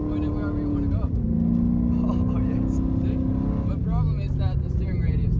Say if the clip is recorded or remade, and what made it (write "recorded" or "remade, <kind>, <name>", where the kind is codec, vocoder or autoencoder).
recorded